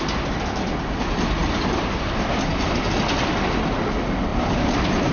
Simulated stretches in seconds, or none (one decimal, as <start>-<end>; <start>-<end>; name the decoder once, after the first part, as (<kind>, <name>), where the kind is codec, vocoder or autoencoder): 4.3-5.1 (vocoder, BigVGAN v2)